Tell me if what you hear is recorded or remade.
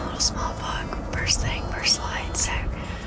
recorded